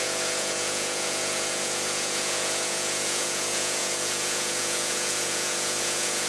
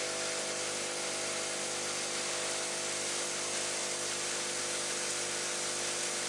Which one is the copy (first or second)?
first